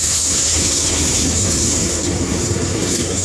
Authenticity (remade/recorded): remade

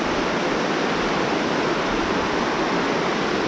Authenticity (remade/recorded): recorded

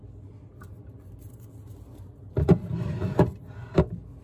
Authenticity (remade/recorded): recorded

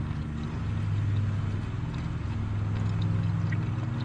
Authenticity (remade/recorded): recorded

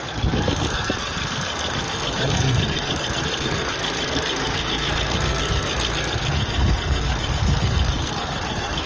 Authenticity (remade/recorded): remade